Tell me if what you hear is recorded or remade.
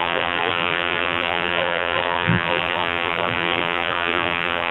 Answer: remade